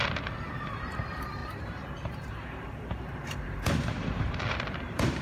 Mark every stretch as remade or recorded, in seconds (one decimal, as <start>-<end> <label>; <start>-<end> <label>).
0.0-5.2 remade